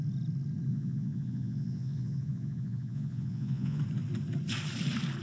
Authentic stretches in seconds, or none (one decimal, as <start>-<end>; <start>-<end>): 0.0-0.7; 3.8-5.2